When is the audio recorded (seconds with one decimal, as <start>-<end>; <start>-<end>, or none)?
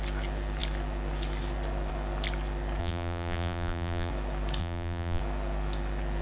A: 0.0-2.8; 4.1-4.6; 5.2-6.2